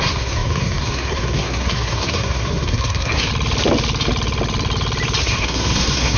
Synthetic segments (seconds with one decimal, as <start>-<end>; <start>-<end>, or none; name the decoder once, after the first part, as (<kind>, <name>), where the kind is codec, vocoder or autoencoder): 0.0-3.3 (codec, SNAC); 5.2-6.2